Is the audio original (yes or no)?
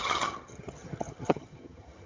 no